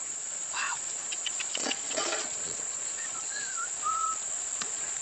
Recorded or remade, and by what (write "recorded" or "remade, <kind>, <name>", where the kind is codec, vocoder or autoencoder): remade, vocoder, Vocos